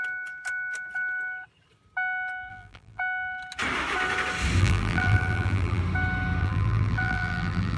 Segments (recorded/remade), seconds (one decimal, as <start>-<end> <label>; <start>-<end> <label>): 0.0-2.5 recorded; 2.5-3.0 remade; 3.0-4.6 recorded; 4.6-5.8 remade; 5.8-6.4 recorded; 6.4-7.8 remade